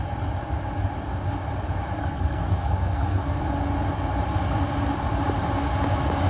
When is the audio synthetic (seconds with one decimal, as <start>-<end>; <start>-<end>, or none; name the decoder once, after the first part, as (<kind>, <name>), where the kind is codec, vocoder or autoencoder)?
2.0-3.4 (codec, SNAC)